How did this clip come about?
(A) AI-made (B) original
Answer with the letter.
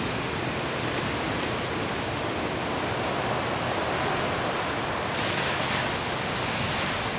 B